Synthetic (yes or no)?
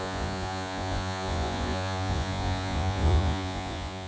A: yes